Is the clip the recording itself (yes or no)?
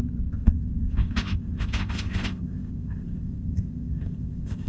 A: no